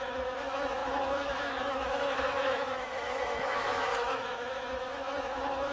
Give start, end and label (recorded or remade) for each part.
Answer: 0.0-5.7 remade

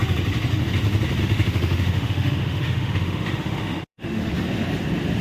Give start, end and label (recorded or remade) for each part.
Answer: 0.0-1.2 recorded; 1.2-4.3 remade; 4.3-5.2 recorded

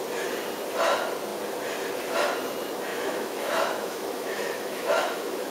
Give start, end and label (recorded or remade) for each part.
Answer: 0.0-2.9 recorded; 2.9-5.5 remade

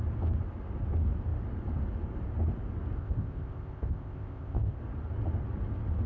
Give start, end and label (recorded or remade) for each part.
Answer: 0.0-3.0 recorded; 3.0-4.8 remade; 4.8-6.1 recorded

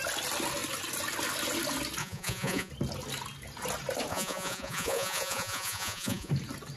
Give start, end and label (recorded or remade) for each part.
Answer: 0.0-2.0 recorded; 2.0-2.7 remade; 2.7-4.1 recorded; 4.1-6.3 remade; 6.3-6.8 recorded

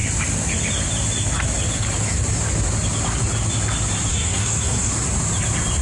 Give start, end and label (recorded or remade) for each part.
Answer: 0.0-4.1 recorded; 4.1-4.9 remade; 4.9-5.8 recorded

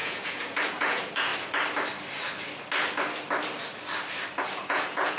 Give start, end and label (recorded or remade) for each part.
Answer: 0.0-1.3 remade; 1.3-4.4 recorded; 4.4-5.2 remade